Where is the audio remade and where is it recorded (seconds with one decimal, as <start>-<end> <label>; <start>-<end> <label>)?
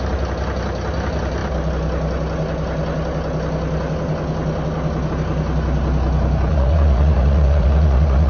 0.0-6.5 recorded; 6.5-8.3 remade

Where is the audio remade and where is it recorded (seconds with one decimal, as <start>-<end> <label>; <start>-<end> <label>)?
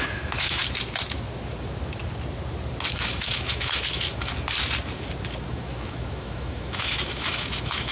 0.0-0.6 remade; 0.6-2.9 recorded; 2.9-4.3 remade; 4.3-5.5 recorded; 5.5-7.9 remade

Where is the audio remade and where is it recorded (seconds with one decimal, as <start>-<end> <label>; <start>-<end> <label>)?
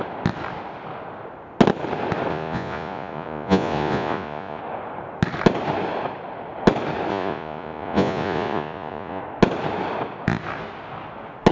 0.0-2.3 recorded; 2.3-4.6 remade; 4.6-7.1 recorded; 7.1-9.2 remade; 9.2-11.5 recorded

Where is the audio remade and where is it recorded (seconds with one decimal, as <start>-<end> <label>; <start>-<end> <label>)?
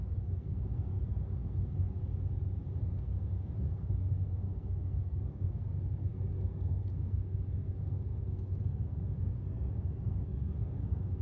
0.0-2.0 remade; 2.0-2.8 recorded; 2.8-11.2 remade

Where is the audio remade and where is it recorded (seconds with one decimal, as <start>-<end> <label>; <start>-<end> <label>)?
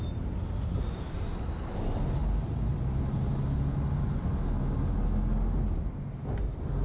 0.0-6.8 recorded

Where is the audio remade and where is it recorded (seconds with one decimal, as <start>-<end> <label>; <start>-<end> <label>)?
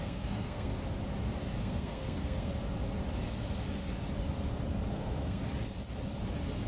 0.0-0.7 remade; 0.7-1.6 recorded; 1.6-2.5 remade; 2.5-4.9 recorded; 4.9-5.4 remade; 5.4-6.7 recorded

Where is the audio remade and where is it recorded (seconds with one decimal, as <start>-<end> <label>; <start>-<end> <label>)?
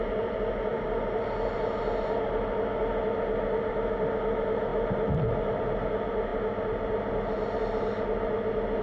0.0-8.8 recorded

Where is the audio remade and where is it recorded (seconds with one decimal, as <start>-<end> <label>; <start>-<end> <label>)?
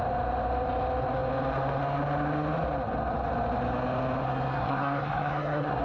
0.0-4.2 recorded; 4.2-5.8 remade